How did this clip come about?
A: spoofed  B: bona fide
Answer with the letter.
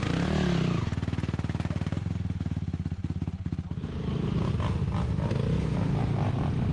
B